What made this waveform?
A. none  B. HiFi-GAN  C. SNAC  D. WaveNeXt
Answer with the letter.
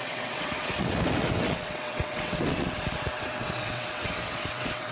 D